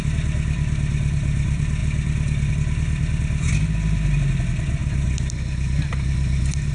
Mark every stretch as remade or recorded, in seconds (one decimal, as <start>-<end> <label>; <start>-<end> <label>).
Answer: 0.0-6.7 recorded